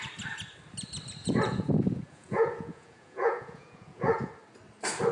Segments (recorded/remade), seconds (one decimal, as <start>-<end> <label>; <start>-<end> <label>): 0.0-1.2 recorded; 1.2-4.3 remade; 4.3-5.1 recorded

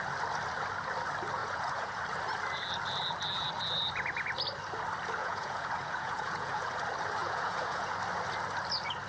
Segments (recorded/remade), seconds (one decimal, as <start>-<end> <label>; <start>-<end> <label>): 0.0-1.4 recorded; 1.4-2.0 remade; 2.0-5.2 recorded; 5.2-6.7 remade; 6.7-7.2 recorded; 7.2-7.9 remade; 7.9-9.1 recorded

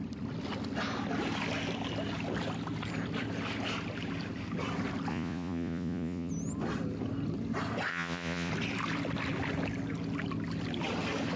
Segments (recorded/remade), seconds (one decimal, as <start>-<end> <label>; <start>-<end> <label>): 0.0-5.1 recorded; 5.1-6.3 remade; 6.3-7.9 recorded; 7.9-8.5 remade; 8.5-11.4 recorded

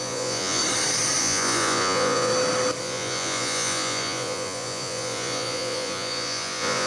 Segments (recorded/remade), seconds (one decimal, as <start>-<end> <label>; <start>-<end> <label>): 0.0-0.6 remade; 0.6-1.2 recorded; 1.2-2.3 remade; 2.3-2.8 recorded; 2.8-6.9 remade